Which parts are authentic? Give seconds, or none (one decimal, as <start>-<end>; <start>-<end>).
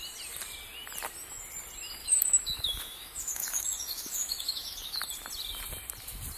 0.0-2.0; 5.0-6.4